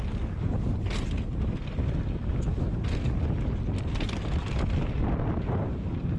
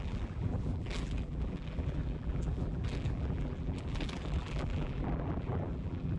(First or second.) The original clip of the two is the first